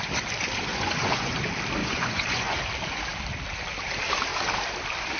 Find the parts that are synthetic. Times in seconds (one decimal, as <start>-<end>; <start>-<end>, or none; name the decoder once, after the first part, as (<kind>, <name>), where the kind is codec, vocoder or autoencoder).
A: 0.7-1.3 (vocoder, Vocos); 1.8-2.6